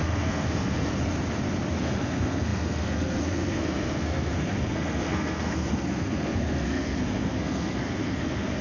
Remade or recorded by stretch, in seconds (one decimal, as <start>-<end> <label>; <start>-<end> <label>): 0.0-0.9 remade; 0.9-1.8 recorded; 1.8-8.6 remade